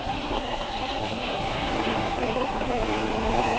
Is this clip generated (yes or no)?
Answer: yes